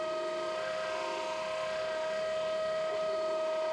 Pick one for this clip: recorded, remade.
remade